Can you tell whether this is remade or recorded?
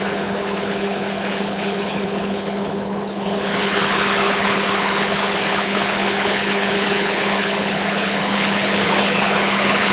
remade